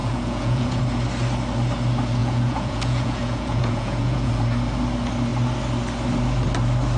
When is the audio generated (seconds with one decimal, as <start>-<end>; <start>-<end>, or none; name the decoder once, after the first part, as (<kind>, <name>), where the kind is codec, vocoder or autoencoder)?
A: 0.0-0.8 (vocoder, Vocos); 2.2-4.3